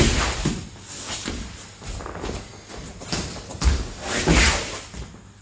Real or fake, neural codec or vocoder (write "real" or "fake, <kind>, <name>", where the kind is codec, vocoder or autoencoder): real